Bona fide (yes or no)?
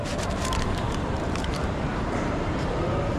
no